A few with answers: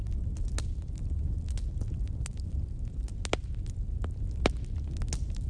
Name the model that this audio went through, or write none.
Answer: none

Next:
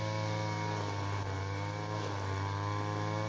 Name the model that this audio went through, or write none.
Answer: none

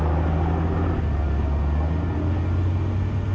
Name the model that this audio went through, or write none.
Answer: none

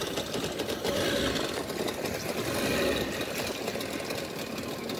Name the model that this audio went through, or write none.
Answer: none